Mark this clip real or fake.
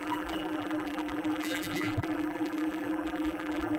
fake